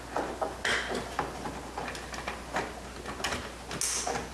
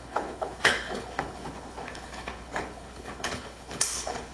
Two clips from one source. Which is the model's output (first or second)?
second